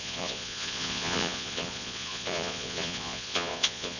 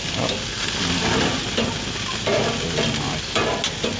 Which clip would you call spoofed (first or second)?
first